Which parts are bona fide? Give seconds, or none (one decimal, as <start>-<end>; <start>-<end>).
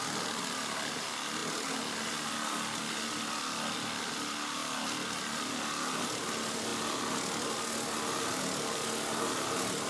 0.0-9.9